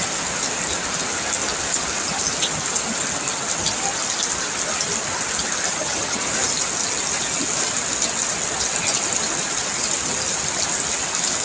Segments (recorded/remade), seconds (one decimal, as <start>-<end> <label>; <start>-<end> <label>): 0.0-5.8 recorded; 5.8-6.3 remade; 6.3-11.4 recorded